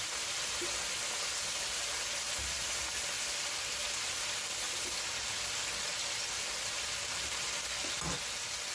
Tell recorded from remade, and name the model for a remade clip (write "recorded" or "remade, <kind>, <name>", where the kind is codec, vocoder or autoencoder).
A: recorded